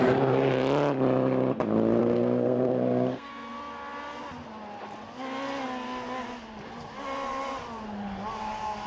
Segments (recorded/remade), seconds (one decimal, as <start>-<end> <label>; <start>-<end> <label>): 0.0-2.0 recorded; 2.0-3.3 remade; 3.3-8.9 recorded